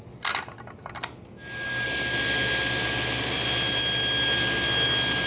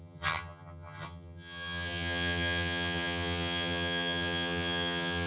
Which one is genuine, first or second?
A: first